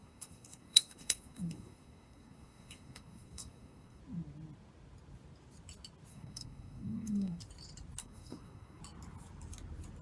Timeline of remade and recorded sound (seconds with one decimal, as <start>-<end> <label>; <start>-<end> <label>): 0.0-4.0 remade; 4.0-6.1 recorded; 6.1-7.4 remade; 7.4-8.0 recorded; 8.0-8.8 remade; 8.8-10.0 recorded

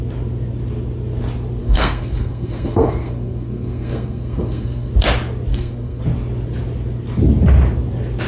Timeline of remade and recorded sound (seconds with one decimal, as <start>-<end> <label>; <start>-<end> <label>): 0.0-1.6 recorded; 1.6-4.9 remade; 4.9-5.5 recorded; 5.5-6.0 remade; 6.0-8.3 recorded

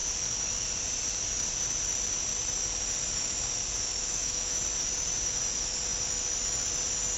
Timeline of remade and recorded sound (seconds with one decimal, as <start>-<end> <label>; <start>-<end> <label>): 0.0-4.0 recorded; 4.0-4.6 remade; 4.6-7.2 recorded